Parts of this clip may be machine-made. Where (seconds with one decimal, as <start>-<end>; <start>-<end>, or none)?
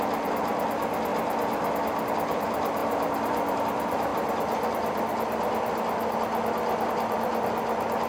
2.8-3.6